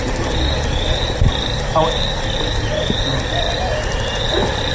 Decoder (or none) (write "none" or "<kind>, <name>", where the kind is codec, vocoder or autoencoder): none